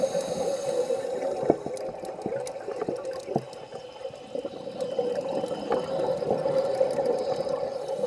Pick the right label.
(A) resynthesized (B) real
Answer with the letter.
B